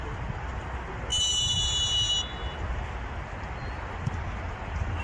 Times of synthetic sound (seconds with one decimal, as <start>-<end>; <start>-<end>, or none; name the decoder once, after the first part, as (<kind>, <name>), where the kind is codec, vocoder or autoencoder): none